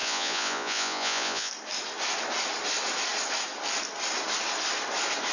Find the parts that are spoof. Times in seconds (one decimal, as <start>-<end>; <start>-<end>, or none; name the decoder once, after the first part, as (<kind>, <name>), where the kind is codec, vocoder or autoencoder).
0.0-1.5 (vocoder, Vocos)